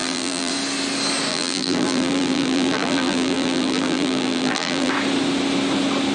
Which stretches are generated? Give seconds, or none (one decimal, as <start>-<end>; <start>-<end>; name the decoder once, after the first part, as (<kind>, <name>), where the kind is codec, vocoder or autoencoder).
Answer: 0.0-0.5 (vocoder, BigVGAN v2); 1.3-4.9